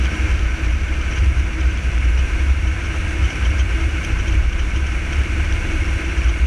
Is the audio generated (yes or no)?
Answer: yes